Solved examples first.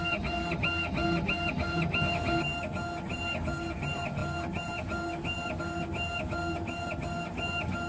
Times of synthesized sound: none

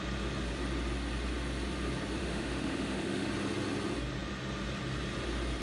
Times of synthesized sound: 2.2-3.3 (autoencoder, DAC-VAE)

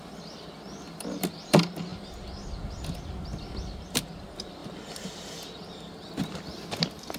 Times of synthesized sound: none

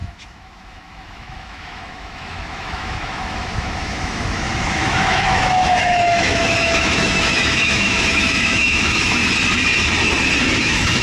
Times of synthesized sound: 0.0-9.2 (autoencoder, DAC-VAE); 10.6-11.0

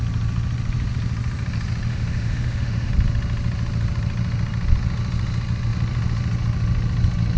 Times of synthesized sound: 1.9-2.9 (autoencoder, DAC-VAE)